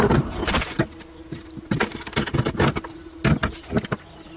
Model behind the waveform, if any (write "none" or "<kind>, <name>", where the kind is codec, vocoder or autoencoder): none